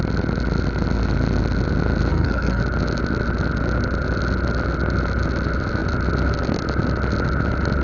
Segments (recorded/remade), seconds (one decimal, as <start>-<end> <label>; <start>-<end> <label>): 0.0-2.1 recorded; 2.1-2.6 remade; 2.6-7.8 recorded